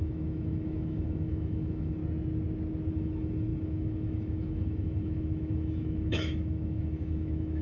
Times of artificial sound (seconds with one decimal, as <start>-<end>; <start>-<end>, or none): 0.0-2.0; 2.9-7.6